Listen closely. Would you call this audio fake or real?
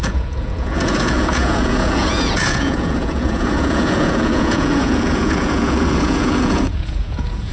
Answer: fake